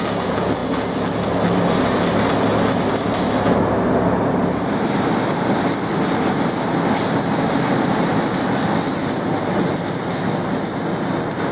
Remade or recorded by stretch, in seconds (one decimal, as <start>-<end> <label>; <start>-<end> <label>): 0.0-11.5 recorded